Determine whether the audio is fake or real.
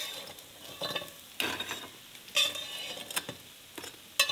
real